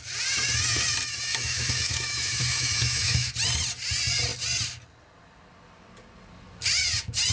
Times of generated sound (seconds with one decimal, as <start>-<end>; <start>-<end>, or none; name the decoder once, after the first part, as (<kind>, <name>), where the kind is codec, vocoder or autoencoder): 1.3-3.3 (autoencoder, DAC-VAE)